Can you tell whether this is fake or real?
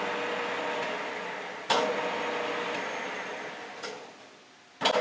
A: real